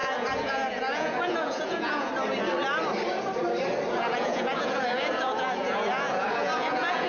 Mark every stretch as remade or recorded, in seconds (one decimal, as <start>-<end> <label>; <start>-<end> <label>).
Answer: 0.0-2.1 remade; 2.1-3.9 recorded; 3.9-7.1 remade